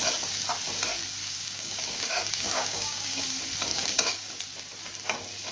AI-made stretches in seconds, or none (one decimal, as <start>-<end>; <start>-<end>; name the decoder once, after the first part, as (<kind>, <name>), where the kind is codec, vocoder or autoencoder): 1.2-3.2 (codec, DAC); 3.7-4.3